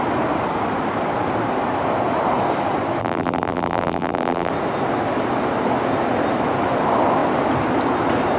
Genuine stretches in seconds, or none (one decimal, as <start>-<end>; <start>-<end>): 0.0-3.0; 4.5-8.4